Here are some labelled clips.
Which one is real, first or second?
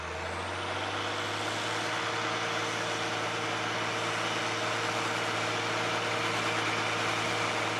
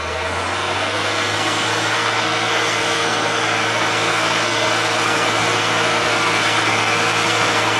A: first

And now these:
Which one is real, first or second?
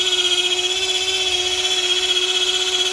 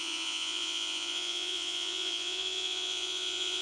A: first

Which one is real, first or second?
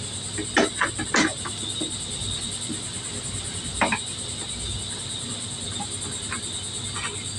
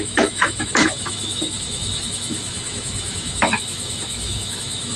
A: first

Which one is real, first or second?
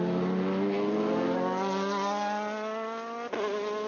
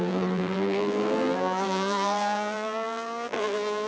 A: first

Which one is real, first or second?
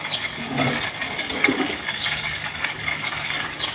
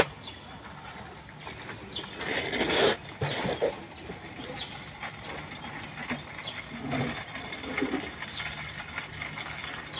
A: second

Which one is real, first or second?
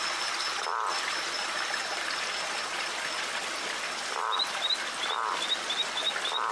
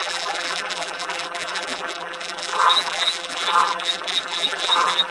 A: first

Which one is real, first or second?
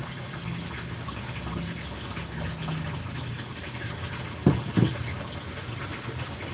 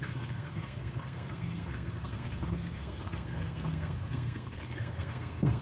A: first